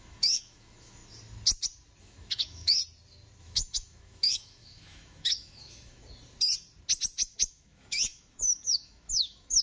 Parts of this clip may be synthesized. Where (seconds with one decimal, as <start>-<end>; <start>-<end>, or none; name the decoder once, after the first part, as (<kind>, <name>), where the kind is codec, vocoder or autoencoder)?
0.0-1.0 (autoencoder, DAC-VAE); 2.0-2.8; 3.4-6.0; 7.5-9.6